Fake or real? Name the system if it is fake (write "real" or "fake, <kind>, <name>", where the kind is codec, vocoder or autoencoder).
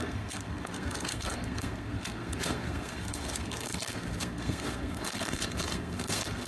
fake, codec, SNAC